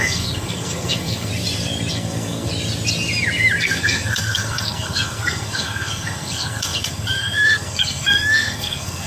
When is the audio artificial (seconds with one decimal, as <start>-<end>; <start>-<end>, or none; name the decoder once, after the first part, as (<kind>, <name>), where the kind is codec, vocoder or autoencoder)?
0.0-1.3 (codec, SNAC); 1.9-2.5; 3.6-9.1